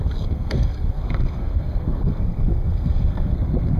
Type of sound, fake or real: fake